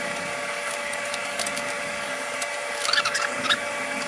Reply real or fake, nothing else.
fake